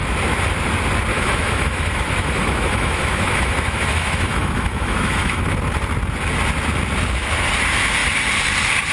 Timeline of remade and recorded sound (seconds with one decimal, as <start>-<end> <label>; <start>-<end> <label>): 0.0-1.1 recorded; 1.1-5.5 remade; 5.5-8.9 recorded